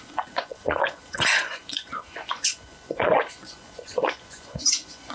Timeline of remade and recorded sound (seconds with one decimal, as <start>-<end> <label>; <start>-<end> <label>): 0.0-5.1 remade